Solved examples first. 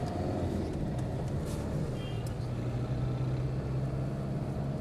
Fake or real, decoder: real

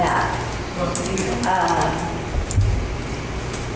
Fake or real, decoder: real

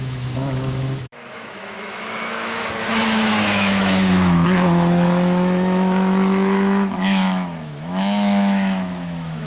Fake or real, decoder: fake, autoencoder, DAC-VAE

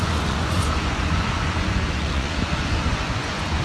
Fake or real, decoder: fake, vocoder, Vocos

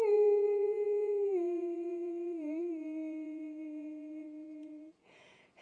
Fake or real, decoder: fake, vocoder, Vocos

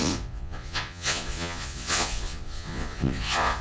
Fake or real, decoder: fake, vocoder, Vocos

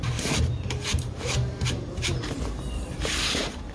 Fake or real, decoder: fake, vocoder, BigVGAN v2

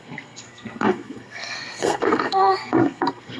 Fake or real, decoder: fake, codec, SNAC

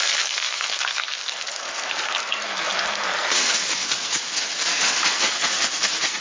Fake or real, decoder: fake, codec, SNAC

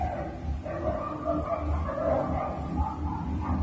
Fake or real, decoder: real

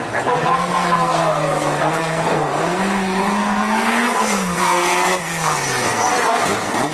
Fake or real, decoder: fake, codec, SNAC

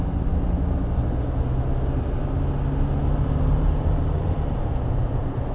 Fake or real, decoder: real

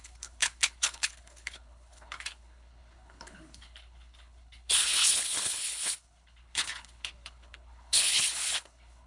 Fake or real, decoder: fake, codec, HILCodec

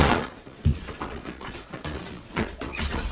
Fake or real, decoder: fake, vocoder, Vocos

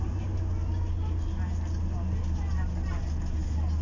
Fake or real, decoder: real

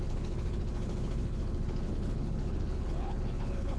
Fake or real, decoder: fake, codec, HILCodec